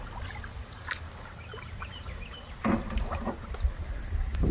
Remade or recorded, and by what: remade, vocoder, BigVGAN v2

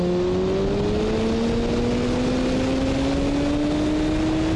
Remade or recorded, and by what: recorded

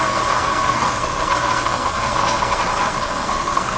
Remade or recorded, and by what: remade, codec, SNAC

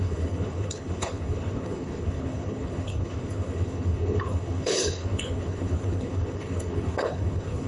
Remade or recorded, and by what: remade, codec, HILCodec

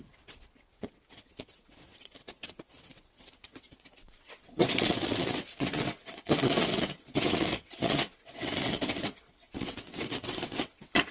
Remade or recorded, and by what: remade, vocoder, WaveNeXt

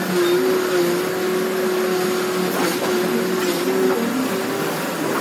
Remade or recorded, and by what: recorded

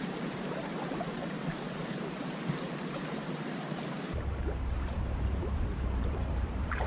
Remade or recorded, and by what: remade, vocoder, BigVGAN v2